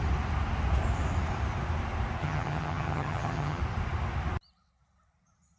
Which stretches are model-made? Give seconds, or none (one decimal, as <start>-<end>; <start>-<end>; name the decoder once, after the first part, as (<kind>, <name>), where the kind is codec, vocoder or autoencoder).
2.2-3.6 (vocoder, HiFi-GAN)